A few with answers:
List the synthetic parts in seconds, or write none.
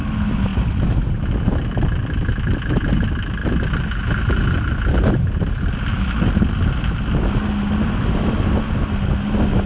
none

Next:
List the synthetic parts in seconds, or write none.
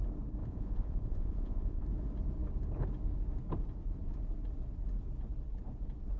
0.4-1.8 (vocoder, Vocos)